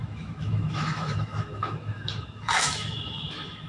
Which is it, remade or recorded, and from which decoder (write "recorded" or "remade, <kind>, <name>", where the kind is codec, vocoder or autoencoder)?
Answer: remade, autoencoder, DAC-VAE